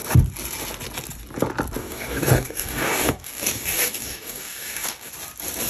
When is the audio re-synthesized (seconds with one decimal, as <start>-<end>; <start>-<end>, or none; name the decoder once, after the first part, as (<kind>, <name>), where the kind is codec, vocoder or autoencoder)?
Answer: 1.8-5.1 (codec, DAC)